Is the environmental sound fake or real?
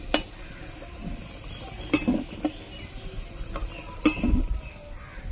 real